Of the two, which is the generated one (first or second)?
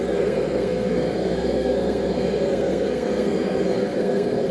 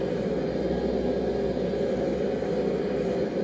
first